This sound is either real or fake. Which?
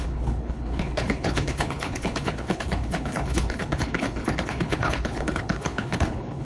fake